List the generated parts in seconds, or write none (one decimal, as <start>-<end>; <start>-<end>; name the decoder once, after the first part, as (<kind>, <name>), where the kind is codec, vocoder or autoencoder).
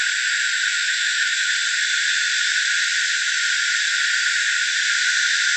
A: 0.7-1.5 (autoencoder, DAC-VAE)